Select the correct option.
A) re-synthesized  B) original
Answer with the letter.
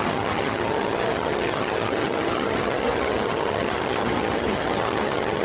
A